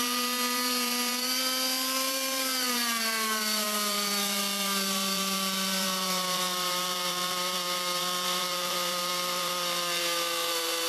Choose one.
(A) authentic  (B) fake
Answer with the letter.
B